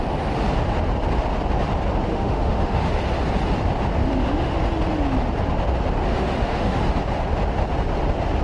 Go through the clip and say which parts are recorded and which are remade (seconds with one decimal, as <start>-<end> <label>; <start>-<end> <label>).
0.0-2.1 recorded; 2.1-2.9 remade; 2.9-4.0 recorded; 4.0-4.5 remade; 4.5-6.1 recorded; 6.1-6.8 remade; 6.8-8.4 recorded